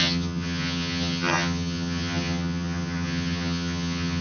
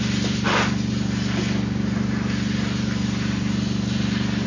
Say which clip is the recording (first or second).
second